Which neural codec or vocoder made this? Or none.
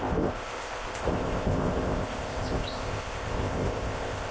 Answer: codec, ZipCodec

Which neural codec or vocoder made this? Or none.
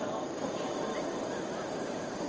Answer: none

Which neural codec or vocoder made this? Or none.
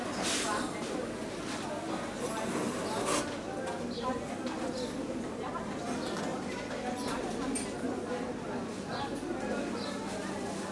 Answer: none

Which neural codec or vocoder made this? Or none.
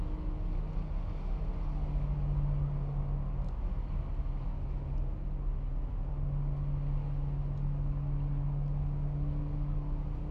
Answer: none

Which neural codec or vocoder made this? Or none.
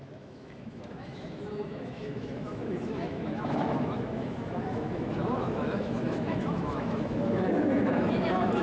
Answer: autoencoder, DAC-VAE